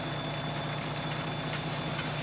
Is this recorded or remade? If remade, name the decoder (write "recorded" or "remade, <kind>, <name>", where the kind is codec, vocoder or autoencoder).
recorded